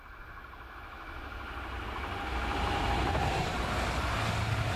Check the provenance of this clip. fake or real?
real